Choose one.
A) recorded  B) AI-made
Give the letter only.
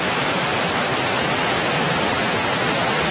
A